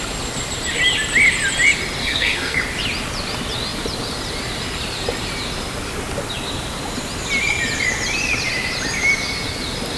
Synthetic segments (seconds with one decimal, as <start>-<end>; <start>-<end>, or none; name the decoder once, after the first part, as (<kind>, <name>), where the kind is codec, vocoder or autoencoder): 2.0-2.6 (codec, SNAC)